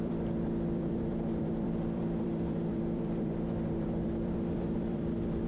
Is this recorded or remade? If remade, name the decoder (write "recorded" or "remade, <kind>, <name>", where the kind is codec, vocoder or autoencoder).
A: remade, vocoder, BigVGAN v2